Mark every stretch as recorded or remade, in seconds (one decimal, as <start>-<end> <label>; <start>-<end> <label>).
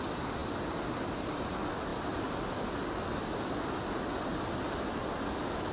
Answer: 0.0-5.7 recorded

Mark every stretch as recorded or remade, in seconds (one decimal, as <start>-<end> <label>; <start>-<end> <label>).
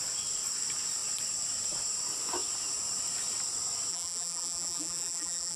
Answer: 0.0-3.9 recorded; 3.9-5.6 remade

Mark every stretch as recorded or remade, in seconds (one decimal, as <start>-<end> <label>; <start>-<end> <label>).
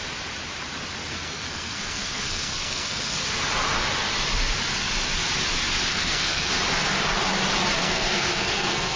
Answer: 0.0-1.1 recorded; 1.1-3.2 remade; 3.2-5.9 recorded; 5.9-6.5 remade; 6.5-7.8 recorded; 7.8-9.0 remade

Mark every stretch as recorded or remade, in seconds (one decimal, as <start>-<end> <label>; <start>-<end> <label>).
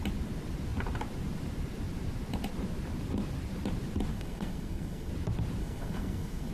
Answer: 0.0-4.1 recorded; 4.1-5.1 remade; 5.1-5.6 recorded; 5.6-6.5 remade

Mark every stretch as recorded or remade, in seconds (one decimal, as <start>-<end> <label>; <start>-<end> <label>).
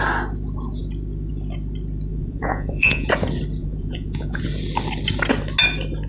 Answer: 0.0-2.1 recorded; 2.1-3.1 remade; 3.1-3.6 recorded; 3.6-4.4 remade; 4.4-6.1 recorded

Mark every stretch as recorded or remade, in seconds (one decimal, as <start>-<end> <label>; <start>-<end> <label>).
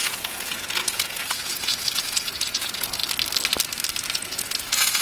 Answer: 0.0-3.0 remade; 3.0-4.1 recorded; 4.1-5.0 remade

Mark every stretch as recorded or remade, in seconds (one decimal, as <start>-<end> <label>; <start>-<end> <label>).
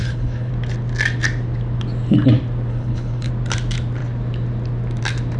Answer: 0.0-0.5 remade; 0.5-2.7 recorded; 2.7-3.3 remade; 3.3-5.4 recorded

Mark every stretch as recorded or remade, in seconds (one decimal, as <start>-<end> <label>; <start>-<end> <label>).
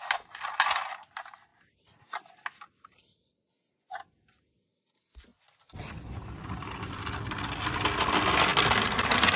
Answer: 0.0-9.4 recorded